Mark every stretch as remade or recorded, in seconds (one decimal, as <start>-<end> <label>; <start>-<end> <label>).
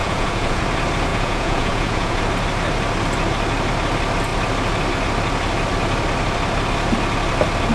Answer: 0.0-0.6 remade; 0.6-1.1 recorded; 1.1-2.2 remade; 2.2-7.7 recorded